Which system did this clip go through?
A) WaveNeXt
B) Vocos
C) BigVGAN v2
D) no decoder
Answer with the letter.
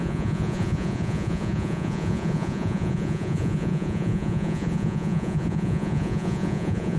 B